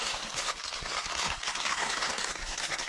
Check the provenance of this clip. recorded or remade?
remade